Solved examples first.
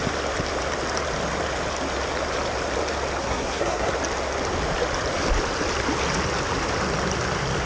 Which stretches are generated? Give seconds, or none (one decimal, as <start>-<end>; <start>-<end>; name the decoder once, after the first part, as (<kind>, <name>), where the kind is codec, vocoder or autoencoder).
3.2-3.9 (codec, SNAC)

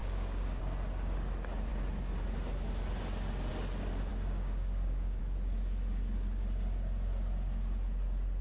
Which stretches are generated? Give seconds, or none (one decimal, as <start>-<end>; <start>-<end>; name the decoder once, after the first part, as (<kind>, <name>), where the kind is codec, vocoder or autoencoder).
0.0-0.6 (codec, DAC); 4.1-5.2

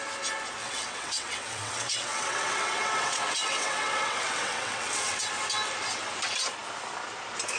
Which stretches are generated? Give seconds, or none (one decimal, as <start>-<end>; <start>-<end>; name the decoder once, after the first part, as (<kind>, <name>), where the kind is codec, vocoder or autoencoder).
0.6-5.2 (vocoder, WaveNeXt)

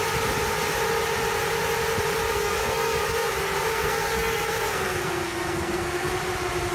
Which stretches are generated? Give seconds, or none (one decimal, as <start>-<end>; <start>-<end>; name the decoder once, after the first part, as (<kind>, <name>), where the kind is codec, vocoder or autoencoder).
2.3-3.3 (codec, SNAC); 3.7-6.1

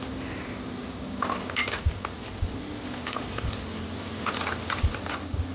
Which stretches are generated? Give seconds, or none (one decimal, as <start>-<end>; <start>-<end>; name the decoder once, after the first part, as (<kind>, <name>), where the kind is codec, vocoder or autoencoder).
none